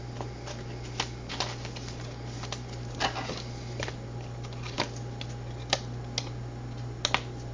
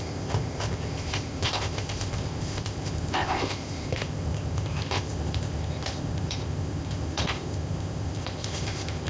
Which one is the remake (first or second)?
second